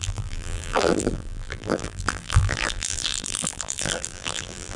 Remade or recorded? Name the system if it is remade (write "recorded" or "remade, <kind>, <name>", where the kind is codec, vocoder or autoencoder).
remade, vocoder, BigVGAN v2